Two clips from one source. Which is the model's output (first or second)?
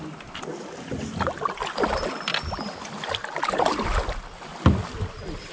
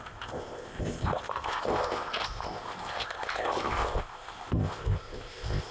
second